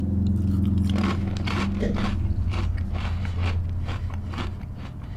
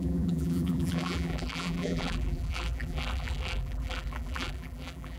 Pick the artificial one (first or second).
second